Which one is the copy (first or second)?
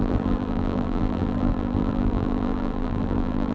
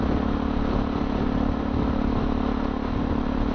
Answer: first